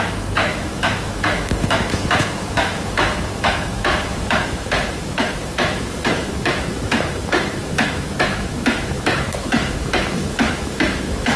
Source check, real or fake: fake